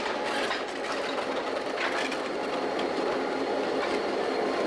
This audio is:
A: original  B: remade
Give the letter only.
A